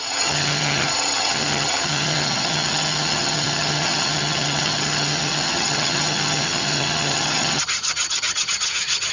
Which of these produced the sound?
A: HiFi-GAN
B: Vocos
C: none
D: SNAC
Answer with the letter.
A